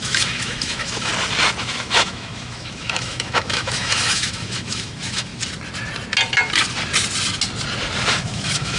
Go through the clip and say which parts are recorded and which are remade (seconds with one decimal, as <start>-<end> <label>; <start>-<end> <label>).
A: 0.0-1.1 remade; 1.1-1.6 recorded; 1.6-5.3 remade; 5.3-8.1 recorded; 8.1-8.8 remade